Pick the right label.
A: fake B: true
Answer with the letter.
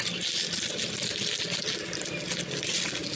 B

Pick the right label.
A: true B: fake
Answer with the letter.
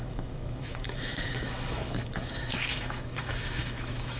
B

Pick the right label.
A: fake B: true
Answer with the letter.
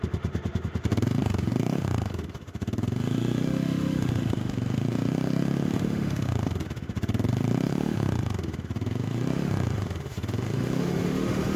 A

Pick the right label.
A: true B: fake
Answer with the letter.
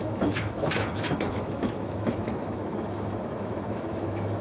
B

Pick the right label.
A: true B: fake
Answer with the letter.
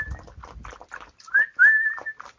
A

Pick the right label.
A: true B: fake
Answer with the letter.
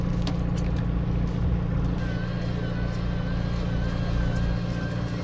A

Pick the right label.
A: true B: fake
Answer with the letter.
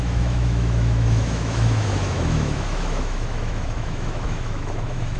B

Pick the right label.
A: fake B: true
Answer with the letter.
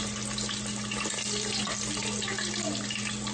B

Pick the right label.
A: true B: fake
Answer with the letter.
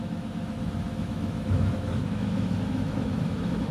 B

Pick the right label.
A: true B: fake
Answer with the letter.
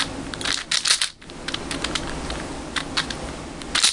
A